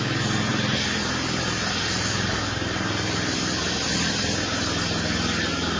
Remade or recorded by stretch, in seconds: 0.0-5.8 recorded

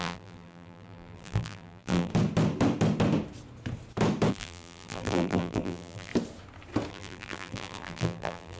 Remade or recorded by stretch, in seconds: 0.0-2.1 remade; 2.1-4.3 recorded; 4.3-6.1 remade; 6.1-6.9 recorded; 6.9-8.6 remade

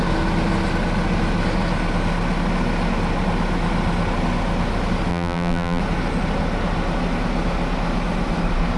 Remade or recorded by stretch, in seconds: 0.0-5.1 recorded; 5.1-5.8 remade; 5.8-8.8 recorded

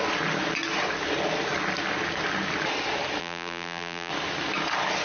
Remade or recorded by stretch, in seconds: 0.0-3.2 recorded; 3.2-4.1 remade; 4.1-5.0 recorded